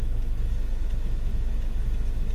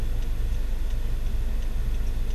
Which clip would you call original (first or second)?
second